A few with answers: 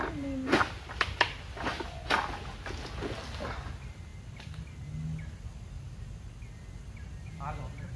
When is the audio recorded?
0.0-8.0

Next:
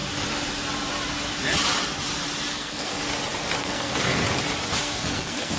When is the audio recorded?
0.0-2.5; 3.0-3.6; 4.2-4.8

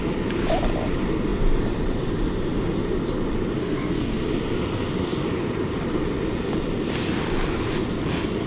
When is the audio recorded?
0.0-3.6; 4.2-8.5

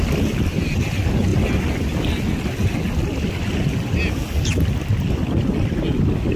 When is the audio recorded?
0.0-6.4

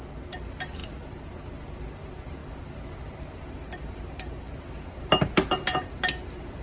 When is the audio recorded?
0.0-6.6

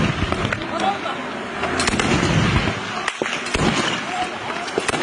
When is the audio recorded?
0.0-5.0

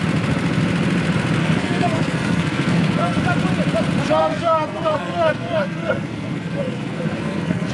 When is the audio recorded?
0.0-1.4; 3.2-4.2